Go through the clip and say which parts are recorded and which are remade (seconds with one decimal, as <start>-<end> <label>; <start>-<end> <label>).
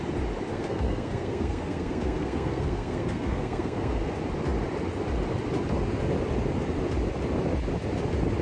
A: 0.0-0.5 recorded; 0.5-4.1 remade; 4.1-8.4 recorded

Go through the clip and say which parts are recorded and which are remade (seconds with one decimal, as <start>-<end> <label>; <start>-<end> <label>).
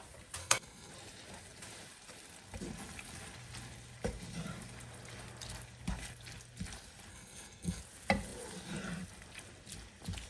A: 0.0-0.4 recorded; 0.4-0.9 remade; 0.9-7.1 recorded; 7.1-7.8 remade; 7.8-10.3 recorded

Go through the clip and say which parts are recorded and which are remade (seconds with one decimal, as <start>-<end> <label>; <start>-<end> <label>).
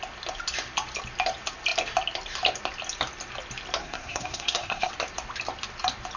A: 0.0-3.8 recorded; 3.8-4.9 remade; 4.9-6.2 recorded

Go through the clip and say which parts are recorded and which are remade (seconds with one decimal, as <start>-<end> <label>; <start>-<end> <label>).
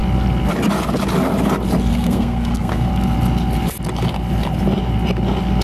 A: 0.0-1.9 recorded; 1.9-2.9 remade; 2.9-5.6 recorded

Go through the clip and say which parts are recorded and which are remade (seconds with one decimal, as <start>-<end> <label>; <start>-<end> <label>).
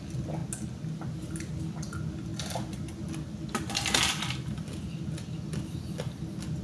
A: 0.0-6.6 recorded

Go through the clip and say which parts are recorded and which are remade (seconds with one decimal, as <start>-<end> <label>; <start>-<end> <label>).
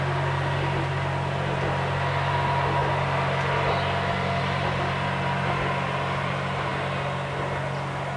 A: 0.0-8.2 recorded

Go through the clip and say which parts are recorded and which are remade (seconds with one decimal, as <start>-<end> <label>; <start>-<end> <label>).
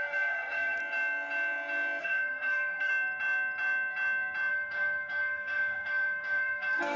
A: 0.0-0.8 remade; 0.8-2.0 recorded; 2.0-2.9 remade; 2.9-4.5 recorded; 4.5-7.0 remade